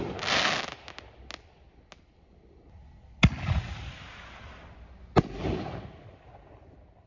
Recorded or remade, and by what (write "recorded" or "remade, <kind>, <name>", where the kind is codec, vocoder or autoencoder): recorded